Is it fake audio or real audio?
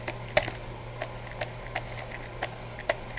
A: real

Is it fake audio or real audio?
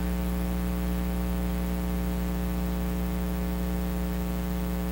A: real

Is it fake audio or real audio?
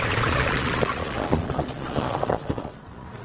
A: fake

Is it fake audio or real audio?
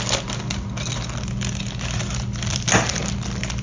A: real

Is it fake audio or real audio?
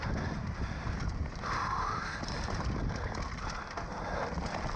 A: real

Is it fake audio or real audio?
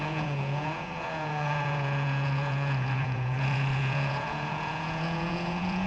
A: fake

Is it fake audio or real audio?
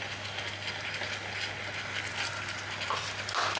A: real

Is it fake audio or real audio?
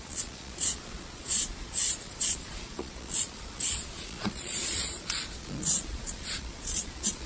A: fake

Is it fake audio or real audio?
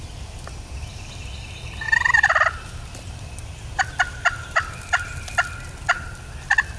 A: real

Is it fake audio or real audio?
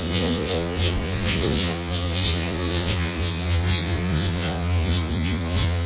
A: fake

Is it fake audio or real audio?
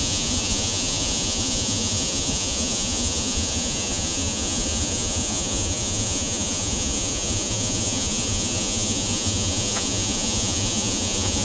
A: fake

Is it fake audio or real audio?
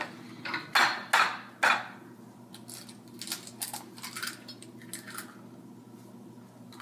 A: real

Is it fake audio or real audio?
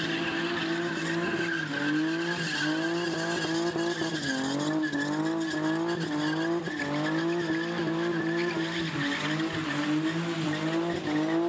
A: real